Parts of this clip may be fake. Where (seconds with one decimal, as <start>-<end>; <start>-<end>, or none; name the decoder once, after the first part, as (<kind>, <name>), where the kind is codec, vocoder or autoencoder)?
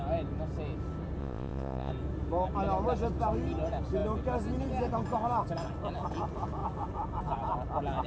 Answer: 1.2-1.9 (vocoder, Vocos)